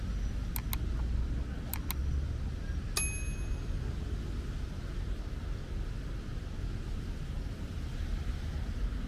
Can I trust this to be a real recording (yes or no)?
yes